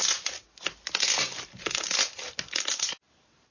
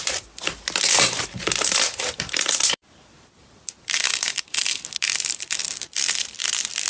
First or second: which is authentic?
first